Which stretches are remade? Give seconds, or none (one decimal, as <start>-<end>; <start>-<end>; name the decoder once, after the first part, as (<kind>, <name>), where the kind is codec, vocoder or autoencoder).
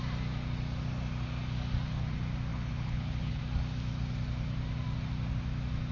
2.5-3.4 (codec, HILCodec)